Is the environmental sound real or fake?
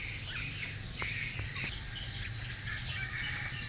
real